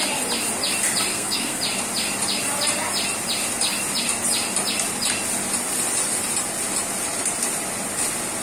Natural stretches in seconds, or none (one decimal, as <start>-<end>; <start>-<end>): 0.0-1.1; 1.6-8.4